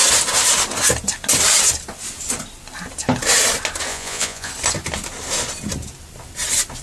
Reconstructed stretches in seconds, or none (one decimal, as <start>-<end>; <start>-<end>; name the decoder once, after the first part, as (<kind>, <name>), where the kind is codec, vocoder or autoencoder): 3.9-4.5 (vocoder, Vocos)